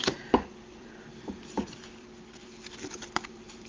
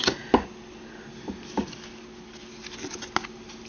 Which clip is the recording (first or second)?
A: second